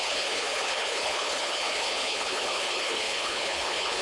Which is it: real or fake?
fake